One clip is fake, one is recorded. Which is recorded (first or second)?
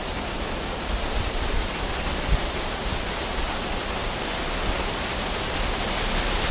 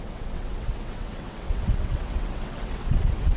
first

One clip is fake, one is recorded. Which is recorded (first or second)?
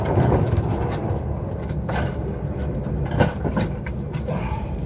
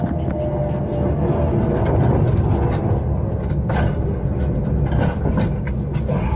second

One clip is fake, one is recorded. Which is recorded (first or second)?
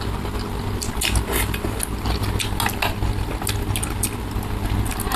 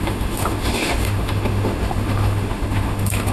first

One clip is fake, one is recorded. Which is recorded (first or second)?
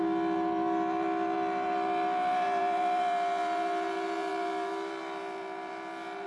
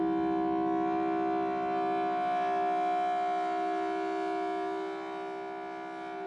second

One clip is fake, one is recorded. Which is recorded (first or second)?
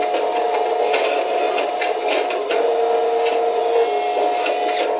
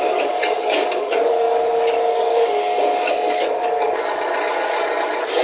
first